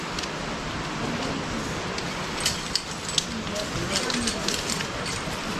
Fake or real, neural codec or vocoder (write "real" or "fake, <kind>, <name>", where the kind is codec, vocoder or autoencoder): real